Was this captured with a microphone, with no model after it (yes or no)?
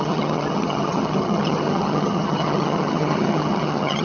no